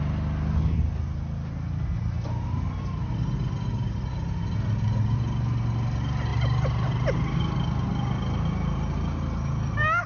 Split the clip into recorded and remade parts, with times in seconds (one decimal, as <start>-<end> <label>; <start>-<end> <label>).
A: 0.0-10.1 recorded